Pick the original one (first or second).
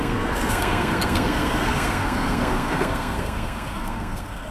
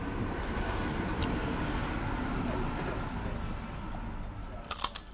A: second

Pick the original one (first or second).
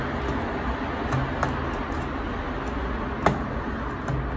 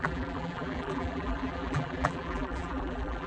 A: first